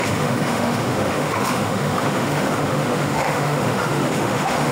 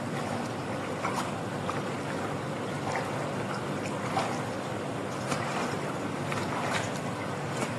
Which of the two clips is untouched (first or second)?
second